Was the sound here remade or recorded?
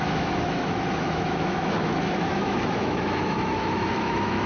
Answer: remade